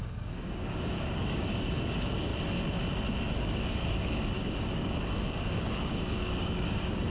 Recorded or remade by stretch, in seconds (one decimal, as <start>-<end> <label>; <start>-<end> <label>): 0.0-2.3 remade; 2.3-3.2 recorded; 3.2-7.1 remade